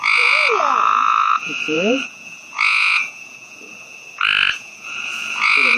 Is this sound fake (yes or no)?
yes